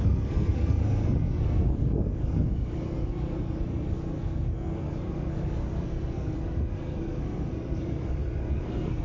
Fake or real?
fake